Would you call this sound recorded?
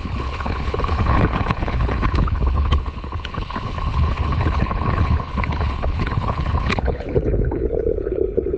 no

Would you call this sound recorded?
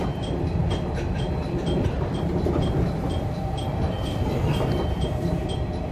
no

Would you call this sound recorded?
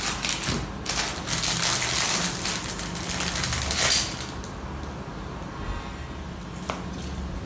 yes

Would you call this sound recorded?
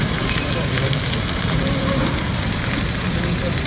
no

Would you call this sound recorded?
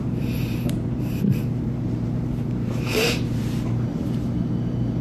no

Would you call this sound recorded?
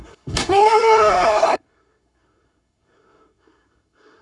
no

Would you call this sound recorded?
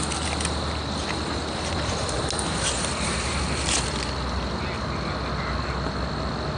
yes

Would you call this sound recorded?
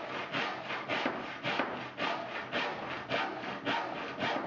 yes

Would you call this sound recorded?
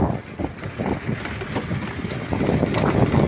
yes